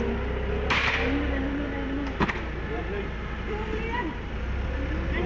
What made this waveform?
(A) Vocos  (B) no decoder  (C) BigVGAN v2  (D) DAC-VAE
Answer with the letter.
B